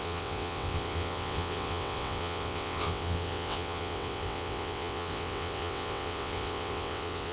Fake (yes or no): yes